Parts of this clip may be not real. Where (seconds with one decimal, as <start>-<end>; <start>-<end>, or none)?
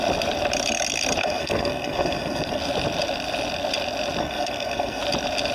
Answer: 1.2-2.6; 4.2-5.0